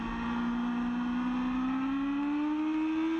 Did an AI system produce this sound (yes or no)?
no